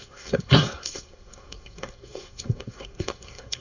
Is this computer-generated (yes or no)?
yes